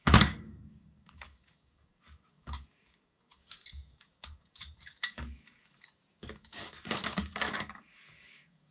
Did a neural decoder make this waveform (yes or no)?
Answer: yes